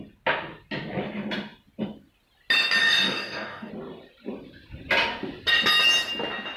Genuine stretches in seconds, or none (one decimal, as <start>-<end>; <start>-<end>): 0.0-2.8; 3.7-6.6